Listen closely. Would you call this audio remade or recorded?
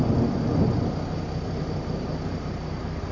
recorded